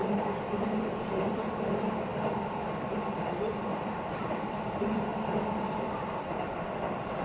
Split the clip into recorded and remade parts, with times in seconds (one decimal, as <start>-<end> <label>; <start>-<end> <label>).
0.0-0.9 recorded; 0.9-5.1 remade; 5.1-6.1 recorded; 6.1-7.2 remade